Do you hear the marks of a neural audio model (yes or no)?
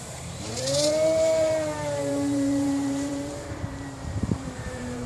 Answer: yes